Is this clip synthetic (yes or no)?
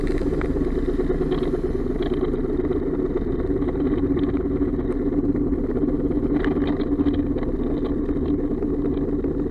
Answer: no